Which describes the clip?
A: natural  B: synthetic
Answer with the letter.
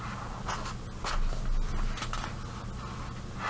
A